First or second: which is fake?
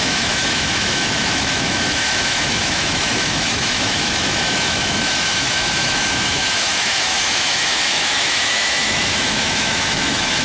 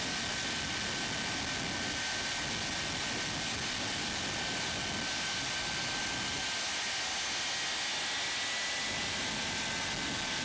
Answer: first